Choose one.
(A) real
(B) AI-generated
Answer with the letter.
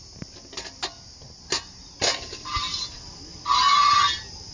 A